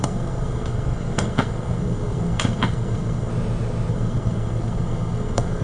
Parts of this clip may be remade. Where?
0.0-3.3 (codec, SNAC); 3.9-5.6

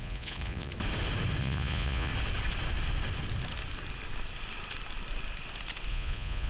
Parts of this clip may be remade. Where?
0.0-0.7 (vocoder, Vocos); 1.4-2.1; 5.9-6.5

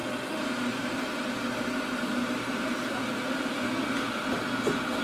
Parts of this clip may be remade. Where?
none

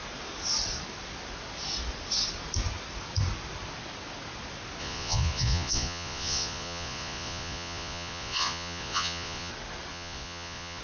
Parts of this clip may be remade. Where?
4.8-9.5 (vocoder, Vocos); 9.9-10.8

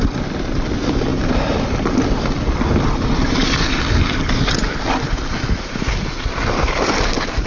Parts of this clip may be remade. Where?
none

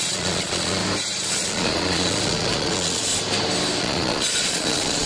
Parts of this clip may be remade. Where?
0.0-0.8 (vocoder, Vocos); 1.3-3.1; 3.8-5.1